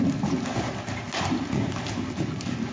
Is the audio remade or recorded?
recorded